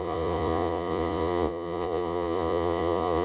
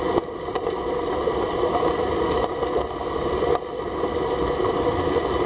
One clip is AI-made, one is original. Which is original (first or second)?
second